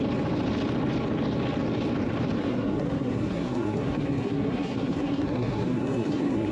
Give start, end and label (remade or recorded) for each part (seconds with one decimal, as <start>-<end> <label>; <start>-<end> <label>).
0.0-2.4 recorded; 2.4-6.5 remade